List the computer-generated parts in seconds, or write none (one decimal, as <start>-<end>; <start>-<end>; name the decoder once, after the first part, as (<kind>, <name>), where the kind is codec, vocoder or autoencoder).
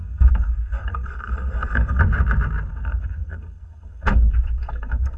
0.0-2.0 (codec, SNAC); 2.7-5.2